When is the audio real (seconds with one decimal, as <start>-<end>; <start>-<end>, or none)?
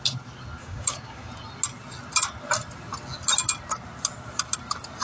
0.0-0.6; 1.3-5.0